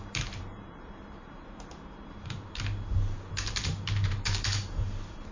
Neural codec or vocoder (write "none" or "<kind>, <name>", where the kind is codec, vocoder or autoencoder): vocoder, BigVGAN v2